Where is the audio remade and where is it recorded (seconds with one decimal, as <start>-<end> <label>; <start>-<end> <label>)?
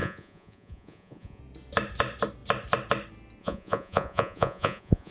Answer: 0.0-1.4 remade; 1.4-3.4 recorded; 3.4-5.1 remade